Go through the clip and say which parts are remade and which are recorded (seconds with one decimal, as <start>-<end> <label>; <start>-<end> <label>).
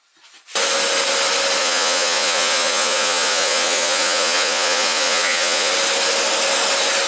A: 0.0-1.6 recorded; 1.6-5.7 remade; 5.7-7.1 recorded